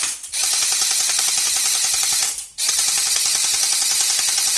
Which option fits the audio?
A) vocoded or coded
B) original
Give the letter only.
B